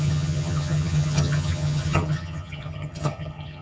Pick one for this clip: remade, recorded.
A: remade